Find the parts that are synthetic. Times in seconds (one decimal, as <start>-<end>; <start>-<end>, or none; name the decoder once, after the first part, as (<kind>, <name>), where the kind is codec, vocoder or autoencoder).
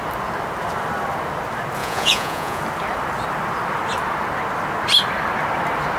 1.8-2.6 (vocoder, Vocos)